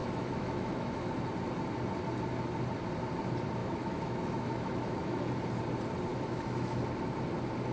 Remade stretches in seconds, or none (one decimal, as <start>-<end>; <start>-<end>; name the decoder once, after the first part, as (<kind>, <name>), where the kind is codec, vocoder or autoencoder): 0.0-1.1 (autoencoder, DAC-VAE); 3.6-5.3; 6.1-6.8